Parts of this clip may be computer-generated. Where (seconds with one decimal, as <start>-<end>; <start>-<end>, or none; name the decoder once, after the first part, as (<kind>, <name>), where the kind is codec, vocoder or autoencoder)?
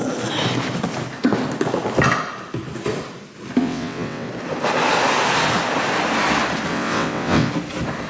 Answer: 3.6-4.3 (vocoder, WaveNeXt); 6.7-7.5